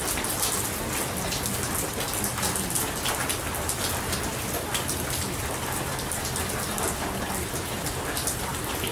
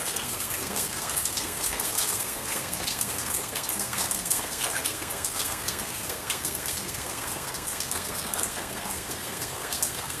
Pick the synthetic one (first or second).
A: second